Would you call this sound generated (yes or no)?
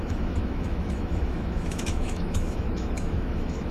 yes